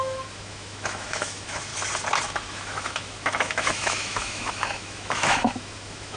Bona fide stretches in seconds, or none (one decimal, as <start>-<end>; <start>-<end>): 1.7-2.5